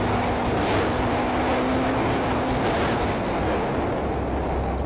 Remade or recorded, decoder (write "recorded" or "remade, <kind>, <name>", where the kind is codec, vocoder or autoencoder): recorded